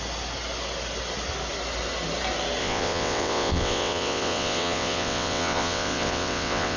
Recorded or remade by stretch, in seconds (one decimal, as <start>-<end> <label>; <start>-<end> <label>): 0.0-2.6 recorded; 2.6-6.8 remade